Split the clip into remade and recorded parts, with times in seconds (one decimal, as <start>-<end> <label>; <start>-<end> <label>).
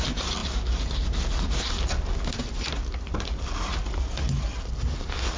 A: 0.0-5.4 recorded